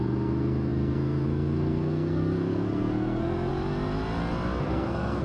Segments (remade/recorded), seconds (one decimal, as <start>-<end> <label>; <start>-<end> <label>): 0.0-3.5 remade; 3.5-4.6 recorded; 4.6-5.2 remade